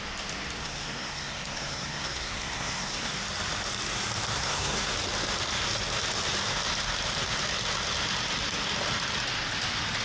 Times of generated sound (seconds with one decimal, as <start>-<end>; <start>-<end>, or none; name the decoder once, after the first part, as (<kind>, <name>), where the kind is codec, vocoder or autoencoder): 0.6-3.1 (codec, SNAC); 4.3-4.9